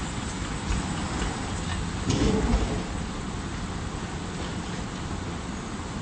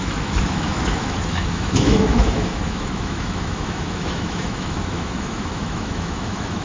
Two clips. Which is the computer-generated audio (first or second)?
second